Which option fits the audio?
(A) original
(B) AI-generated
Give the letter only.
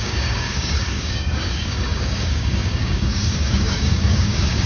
B